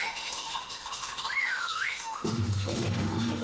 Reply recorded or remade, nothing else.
remade